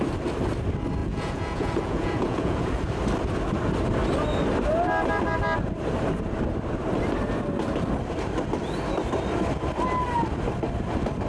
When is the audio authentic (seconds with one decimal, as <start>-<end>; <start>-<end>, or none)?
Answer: 0.0-1.0; 2.9-11.3

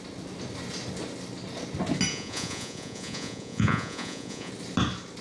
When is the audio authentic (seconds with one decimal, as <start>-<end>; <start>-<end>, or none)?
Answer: 0.0-2.1; 4.5-5.2

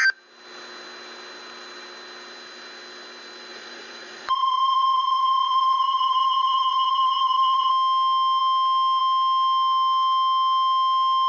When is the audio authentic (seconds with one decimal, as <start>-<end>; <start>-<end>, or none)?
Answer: 0.0-3.5; 7.7-11.3

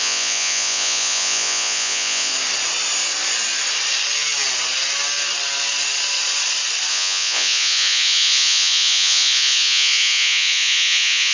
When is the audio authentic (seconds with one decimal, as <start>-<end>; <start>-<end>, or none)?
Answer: 2.3-6.9

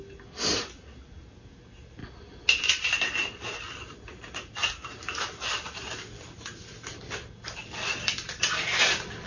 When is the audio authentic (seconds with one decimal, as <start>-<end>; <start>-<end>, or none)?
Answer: 0.0-9.3